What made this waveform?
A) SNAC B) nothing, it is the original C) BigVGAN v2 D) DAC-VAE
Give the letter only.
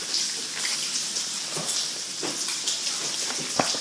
B